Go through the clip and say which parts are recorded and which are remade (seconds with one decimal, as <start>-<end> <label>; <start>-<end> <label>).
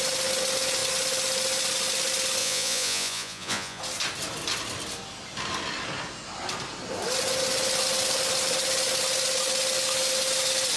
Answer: 0.0-2.4 recorded; 2.4-3.8 remade; 3.8-10.8 recorded